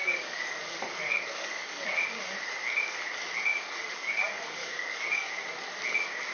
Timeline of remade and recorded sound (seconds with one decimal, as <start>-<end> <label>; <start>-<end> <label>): 0.0-2.2 remade; 2.2-3.5 recorded; 3.5-5.3 remade; 5.3-6.3 recorded